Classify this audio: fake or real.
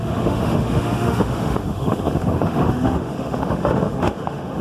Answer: fake